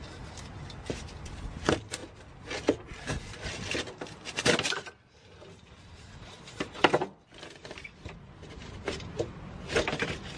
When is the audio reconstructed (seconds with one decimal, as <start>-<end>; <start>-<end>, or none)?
none